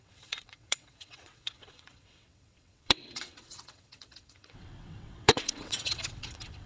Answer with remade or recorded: remade